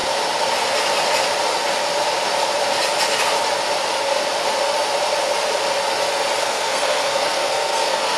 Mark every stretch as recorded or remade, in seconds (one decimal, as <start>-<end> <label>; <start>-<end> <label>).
0.0-6.4 recorded; 6.4-8.2 remade